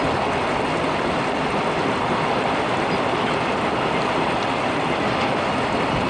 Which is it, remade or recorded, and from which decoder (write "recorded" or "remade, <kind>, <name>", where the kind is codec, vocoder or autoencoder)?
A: recorded